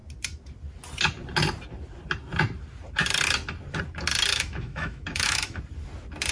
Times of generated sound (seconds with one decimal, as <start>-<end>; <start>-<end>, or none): 4.3-5.6

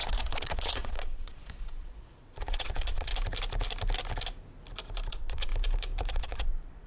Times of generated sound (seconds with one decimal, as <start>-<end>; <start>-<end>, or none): 0.0-3.1; 5.1-5.5; 6.1-6.9

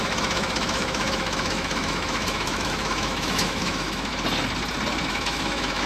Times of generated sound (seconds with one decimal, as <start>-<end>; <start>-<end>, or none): 0.0-4.1; 5.1-5.9

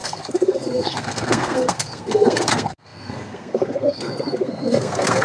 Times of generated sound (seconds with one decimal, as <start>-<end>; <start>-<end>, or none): 0.0-5.2

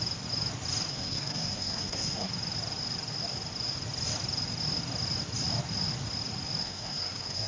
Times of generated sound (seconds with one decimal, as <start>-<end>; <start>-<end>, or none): 0.9-2.3; 6.6-7.5

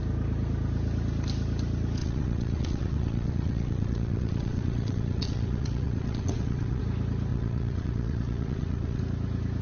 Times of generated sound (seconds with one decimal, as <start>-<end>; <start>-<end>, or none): 2.0-6.8; 7.3-9.0

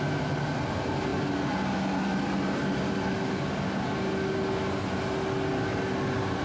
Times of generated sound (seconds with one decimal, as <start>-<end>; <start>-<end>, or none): none